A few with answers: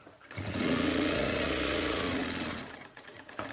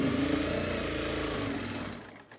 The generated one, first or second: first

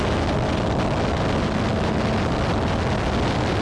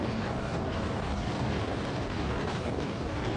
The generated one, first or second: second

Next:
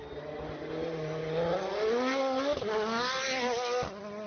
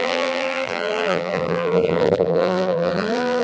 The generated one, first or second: second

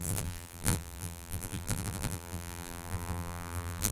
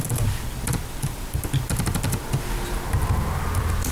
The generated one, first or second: first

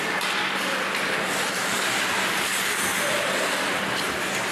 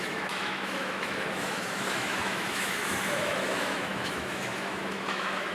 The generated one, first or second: second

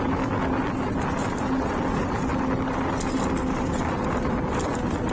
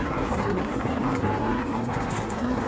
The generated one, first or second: second